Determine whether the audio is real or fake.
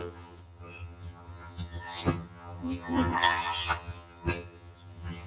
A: fake